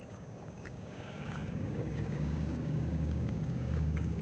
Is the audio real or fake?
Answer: fake